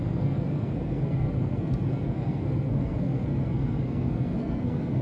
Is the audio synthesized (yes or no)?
yes